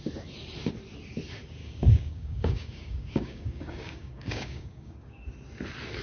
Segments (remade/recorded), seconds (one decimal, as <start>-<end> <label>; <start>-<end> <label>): 0.0-1.6 recorded; 1.6-5.2 remade; 5.2-6.0 recorded